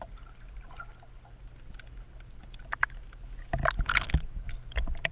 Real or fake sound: real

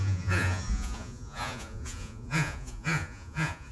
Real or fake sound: fake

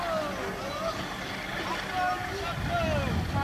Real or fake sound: real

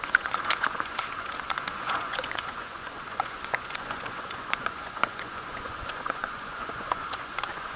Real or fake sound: fake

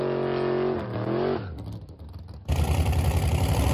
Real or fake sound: real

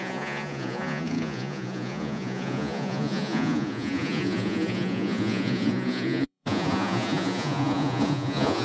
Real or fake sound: fake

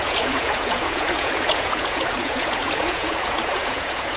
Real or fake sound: fake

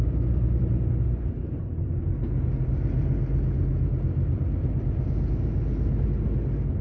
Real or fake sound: real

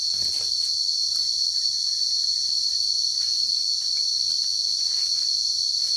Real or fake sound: real